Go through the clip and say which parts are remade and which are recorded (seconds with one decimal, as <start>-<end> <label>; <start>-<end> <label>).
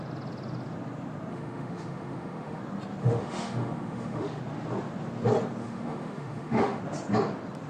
0.0-1.3 recorded; 1.3-2.6 remade; 2.6-3.0 recorded; 3.0-4.4 remade; 4.4-5.6 recorded; 5.6-6.8 remade; 6.8-7.7 recorded